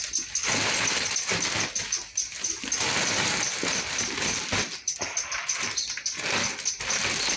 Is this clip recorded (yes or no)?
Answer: yes